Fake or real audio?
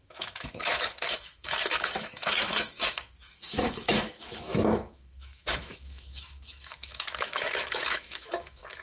fake